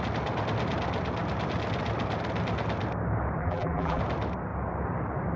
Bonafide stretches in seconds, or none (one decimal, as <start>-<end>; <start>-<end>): 0.0-3.4; 4.0-5.4